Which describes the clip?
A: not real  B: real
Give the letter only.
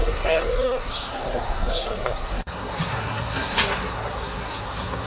A